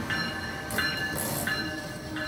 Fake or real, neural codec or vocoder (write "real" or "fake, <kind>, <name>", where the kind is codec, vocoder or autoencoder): real